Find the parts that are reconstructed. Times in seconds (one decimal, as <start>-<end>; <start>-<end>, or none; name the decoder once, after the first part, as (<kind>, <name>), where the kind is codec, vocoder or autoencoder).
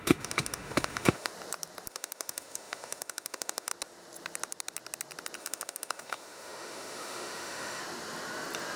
0.0-1.3 (autoencoder, DAC-VAE); 1.9-3.7; 5.4-7.8